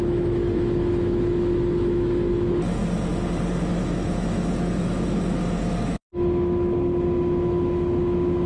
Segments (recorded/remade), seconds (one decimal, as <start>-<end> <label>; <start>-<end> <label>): 0.0-2.8 remade; 2.8-3.6 recorded; 3.6-8.5 remade